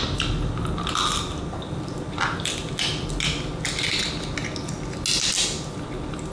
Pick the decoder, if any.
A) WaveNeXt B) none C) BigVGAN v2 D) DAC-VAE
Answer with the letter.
B